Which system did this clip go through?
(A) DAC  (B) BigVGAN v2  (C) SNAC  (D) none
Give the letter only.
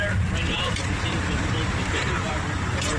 B